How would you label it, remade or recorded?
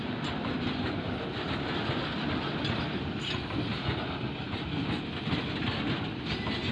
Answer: recorded